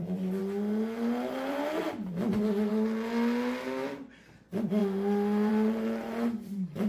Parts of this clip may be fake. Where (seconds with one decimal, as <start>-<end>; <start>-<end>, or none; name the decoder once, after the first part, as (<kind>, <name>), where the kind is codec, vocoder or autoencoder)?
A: 0.0-0.4 (vocoder, BigVGAN v2); 1.5-2.7; 4.3-4.8; 5.5-6.9